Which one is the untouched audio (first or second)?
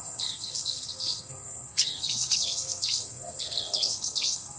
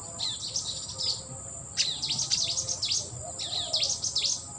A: second